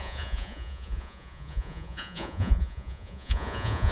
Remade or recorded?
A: remade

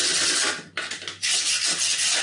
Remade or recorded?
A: recorded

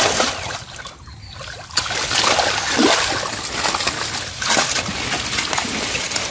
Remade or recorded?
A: recorded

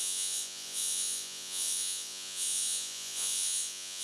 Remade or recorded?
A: remade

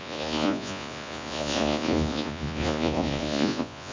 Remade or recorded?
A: remade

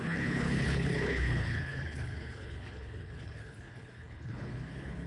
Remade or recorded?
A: remade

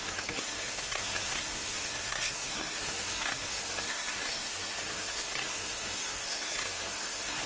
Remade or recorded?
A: remade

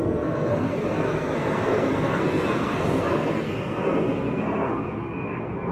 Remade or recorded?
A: remade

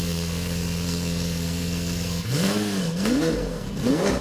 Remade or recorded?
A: remade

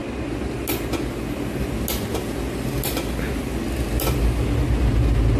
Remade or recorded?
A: recorded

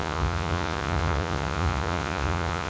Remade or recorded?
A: remade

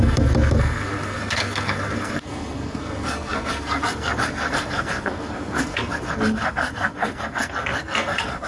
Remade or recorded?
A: remade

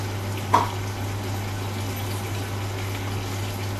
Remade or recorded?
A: recorded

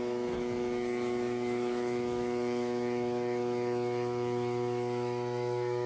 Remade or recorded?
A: remade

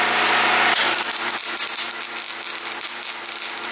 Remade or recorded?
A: recorded